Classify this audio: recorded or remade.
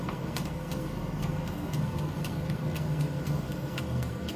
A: remade